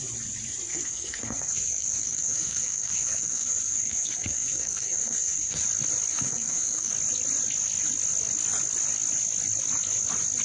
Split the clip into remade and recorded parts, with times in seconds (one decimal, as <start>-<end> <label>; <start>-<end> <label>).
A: 0.0-0.7 recorded; 0.7-5.6 remade; 5.6-6.1 recorded; 6.1-6.9 remade; 6.9-10.4 recorded